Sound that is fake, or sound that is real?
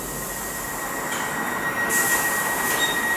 real